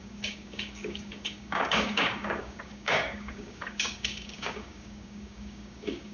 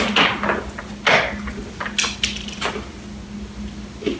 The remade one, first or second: first